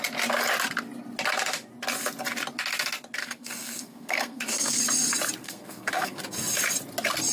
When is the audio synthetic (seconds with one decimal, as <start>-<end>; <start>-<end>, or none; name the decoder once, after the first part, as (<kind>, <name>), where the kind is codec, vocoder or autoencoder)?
3.2-4.8 (codec, SNAC); 5.4-6.2